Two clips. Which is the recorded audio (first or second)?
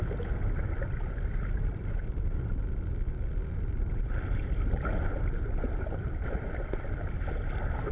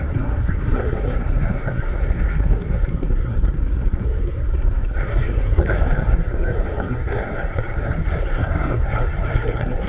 first